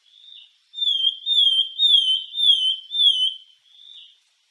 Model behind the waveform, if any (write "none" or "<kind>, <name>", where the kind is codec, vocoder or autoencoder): none